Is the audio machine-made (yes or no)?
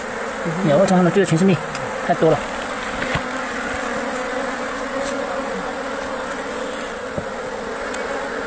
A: no